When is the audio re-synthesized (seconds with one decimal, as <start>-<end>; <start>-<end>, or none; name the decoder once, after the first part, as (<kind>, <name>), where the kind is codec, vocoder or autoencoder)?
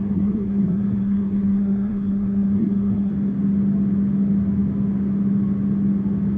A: 0.0-3.1 (codec, SNAC)